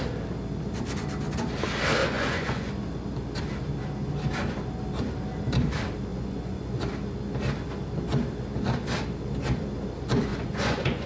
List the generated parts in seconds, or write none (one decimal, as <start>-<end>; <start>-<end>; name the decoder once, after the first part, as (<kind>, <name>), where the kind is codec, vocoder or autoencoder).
2.0-2.7 (vocoder, Vocos); 6.1-6.8; 10.3-11.1